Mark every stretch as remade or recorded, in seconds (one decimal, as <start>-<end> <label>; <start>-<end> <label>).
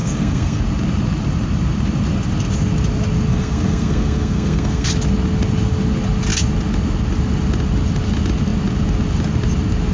0.0-0.6 remade; 0.6-3.3 recorded; 3.3-4.9 remade; 4.9-9.9 recorded